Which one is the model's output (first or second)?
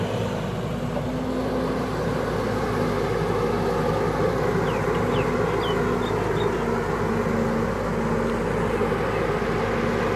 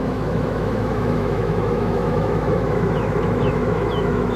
second